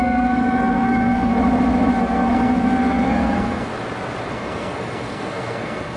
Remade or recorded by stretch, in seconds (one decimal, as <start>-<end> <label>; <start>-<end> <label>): 0.0-1.3 remade; 1.3-2.0 recorded; 2.0-3.7 remade; 3.7-4.3 recorded; 4.3-6.0 remade